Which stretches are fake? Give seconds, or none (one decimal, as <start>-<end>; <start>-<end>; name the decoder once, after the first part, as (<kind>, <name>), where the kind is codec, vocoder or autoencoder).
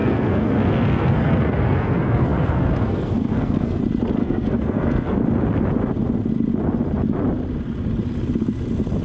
0.0-3.8 (codec, SNAC); 4.2-5.2